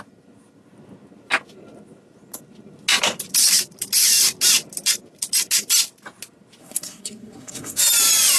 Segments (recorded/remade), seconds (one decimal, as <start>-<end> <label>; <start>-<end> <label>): 0.0-6.6 recorded; 6.6-7.8 remade; 7.8-8.4 recorded